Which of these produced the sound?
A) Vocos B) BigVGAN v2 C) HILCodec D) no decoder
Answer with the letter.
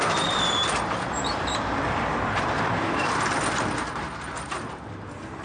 B